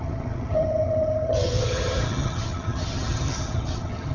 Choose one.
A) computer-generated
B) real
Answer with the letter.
A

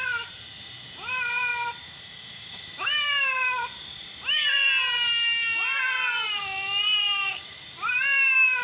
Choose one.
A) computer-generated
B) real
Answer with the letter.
A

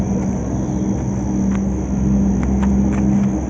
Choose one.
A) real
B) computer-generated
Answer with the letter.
A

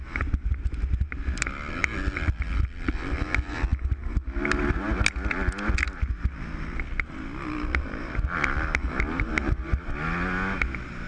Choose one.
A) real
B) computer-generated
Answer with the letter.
A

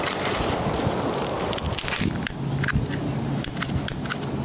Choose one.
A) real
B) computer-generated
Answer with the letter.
A